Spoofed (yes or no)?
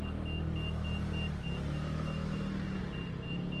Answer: no